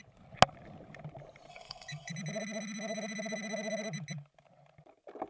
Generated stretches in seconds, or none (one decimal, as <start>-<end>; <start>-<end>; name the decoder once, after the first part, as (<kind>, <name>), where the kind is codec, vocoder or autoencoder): 1.5-2.1 (codec, SNAC)